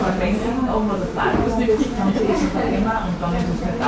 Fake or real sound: fake